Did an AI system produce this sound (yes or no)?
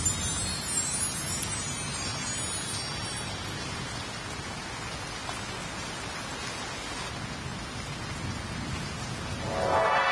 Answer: no